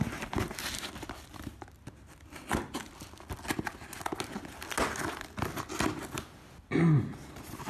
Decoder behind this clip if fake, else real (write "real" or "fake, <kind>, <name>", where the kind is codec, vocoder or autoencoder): real